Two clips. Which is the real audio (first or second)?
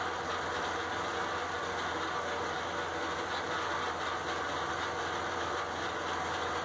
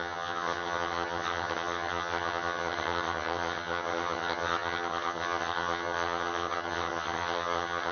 first